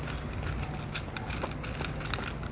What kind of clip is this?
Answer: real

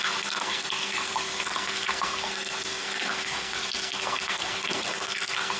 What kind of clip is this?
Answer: fake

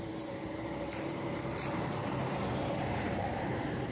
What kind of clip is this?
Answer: fake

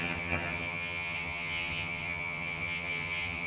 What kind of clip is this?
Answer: fake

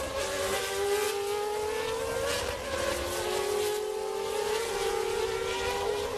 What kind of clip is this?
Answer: real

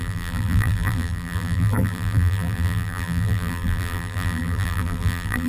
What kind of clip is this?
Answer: fake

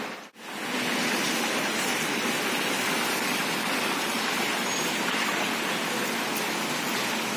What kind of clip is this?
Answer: real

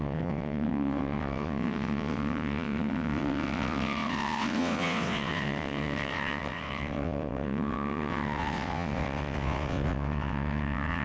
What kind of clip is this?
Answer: fake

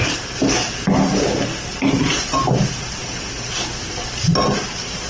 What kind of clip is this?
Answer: real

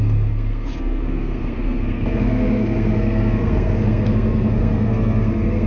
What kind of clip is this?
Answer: fake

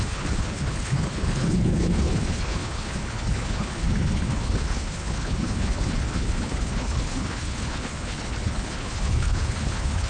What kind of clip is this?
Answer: fake